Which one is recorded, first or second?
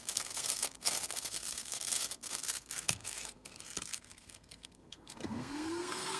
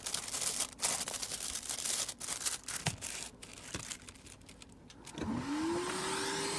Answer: second